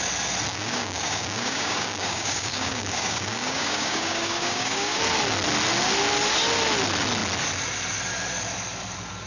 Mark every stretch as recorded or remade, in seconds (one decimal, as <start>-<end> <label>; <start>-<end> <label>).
0.0-0.5 recorded; 0.5-5.0 remade; 5.0-9.3 recorded